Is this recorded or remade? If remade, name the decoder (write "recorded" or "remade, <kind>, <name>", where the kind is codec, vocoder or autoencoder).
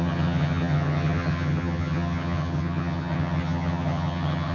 remade, vocoder, HiFi-GAN